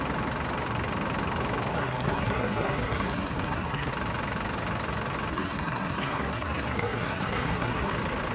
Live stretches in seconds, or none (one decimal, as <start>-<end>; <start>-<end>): 0.0-1.7; 3.9-5.3; 7.9-8.3

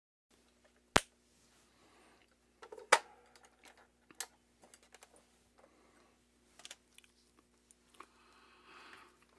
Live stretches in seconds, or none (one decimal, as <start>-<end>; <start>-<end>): 0.0-9.4

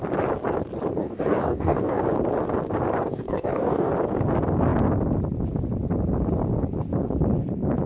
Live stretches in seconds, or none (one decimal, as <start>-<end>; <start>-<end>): 0.0-1.0; 2.0-3.1; 3.9-7.9

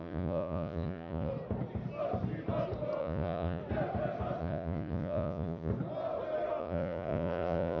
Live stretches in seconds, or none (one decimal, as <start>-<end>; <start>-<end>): 1.3-3.0; 3.6-4.4; 5.7-6.6

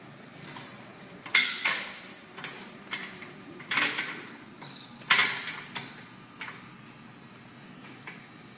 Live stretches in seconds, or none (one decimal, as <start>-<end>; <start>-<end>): 5.2-6.7